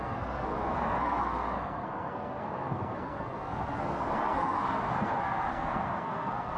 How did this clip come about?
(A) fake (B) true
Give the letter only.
A